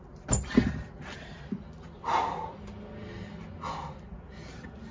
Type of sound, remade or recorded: recorded